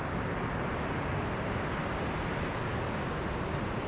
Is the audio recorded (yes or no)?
yes